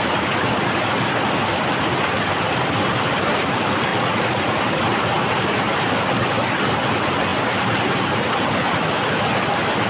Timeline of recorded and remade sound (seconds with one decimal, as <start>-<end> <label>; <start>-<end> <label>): 0.0-3.9 recorded; 3.9-4.6 remade; 4.6-9.9 recorded